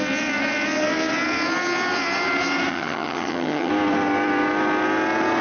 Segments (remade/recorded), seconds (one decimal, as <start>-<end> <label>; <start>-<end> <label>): 0.0-2.7 recorded; 2.7-3.7 remade; 3.7-5.4 recorded